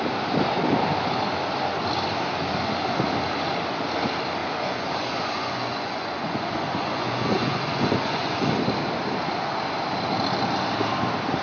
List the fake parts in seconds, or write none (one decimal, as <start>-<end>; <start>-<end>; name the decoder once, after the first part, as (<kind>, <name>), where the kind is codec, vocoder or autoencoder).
4.4-8.5 (vocoder, Vocos)